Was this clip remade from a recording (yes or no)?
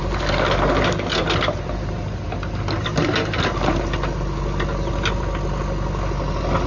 no